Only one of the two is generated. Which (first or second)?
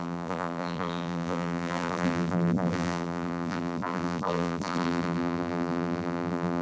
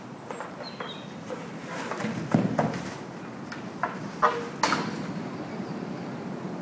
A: first